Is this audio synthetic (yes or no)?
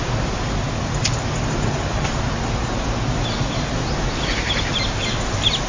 no